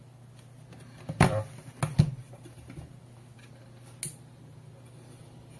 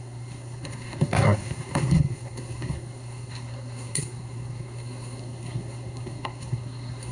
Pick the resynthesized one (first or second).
second